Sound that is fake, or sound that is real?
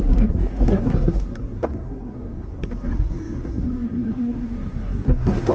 fake